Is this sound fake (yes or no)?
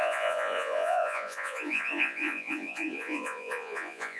yes